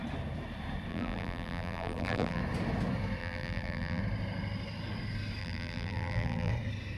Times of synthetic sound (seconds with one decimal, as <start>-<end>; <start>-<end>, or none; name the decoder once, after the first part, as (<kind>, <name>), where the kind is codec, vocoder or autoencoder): 0.9-2.4 (vocoder, BigVGAN v2); 3.2-4.0; 5.4-6.5